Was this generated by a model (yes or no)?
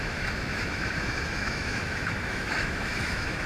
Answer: yes